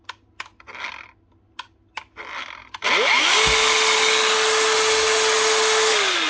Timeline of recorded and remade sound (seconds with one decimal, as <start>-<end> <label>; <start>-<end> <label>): 0.0-6.3 recorded